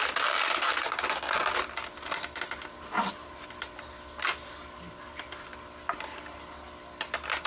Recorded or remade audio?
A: recorded